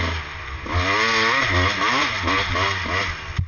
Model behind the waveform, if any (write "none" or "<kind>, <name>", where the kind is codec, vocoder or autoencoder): none